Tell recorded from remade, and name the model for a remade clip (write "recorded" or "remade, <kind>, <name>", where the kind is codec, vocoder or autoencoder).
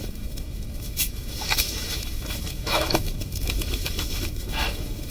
remade, autoencoder, DAC-VAE